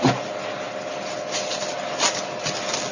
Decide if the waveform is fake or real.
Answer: real